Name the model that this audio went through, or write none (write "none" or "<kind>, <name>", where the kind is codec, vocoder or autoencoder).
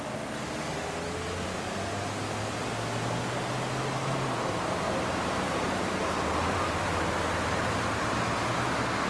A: none